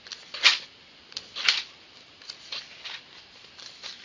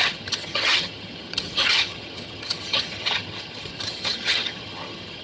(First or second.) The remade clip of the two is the second